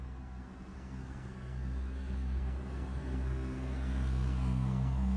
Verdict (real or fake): fake